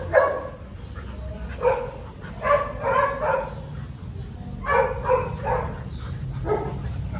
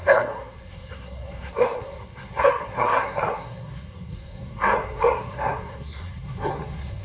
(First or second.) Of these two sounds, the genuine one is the first